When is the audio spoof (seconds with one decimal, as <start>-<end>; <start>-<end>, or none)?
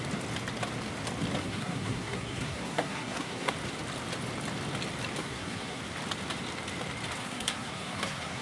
1.4-3.5; 5.2-5.8; 7.2-8.4